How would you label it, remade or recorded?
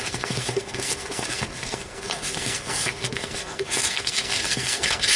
remade